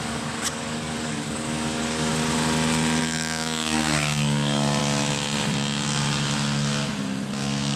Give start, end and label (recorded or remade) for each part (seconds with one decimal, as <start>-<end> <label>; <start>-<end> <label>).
0.0-2.1 remade; 2.1-3.0 recorded; 3.0-4.8 remade; 4.8-7.3 recorded; 7.3-7.8 remade